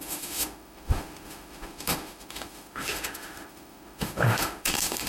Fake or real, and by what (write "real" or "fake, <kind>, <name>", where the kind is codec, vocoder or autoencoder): fake, autoencoder, DAC-VAE